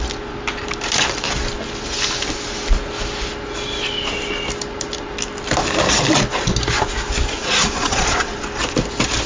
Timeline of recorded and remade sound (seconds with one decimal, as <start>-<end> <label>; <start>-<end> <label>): 0.0-7.4 recorded; 7.4-8.4 remade; 8.4-9.3 recorded